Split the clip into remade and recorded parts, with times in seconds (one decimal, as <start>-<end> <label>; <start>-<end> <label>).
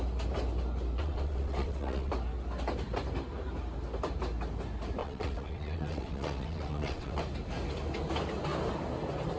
0.0-1.0 recorded; 1.0-2.1 remade; 2.1-5.0 recorded; 5.0-7.2 remade; 7.2-9.4 recorded